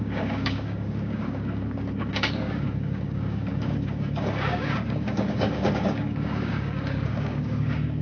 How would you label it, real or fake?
fake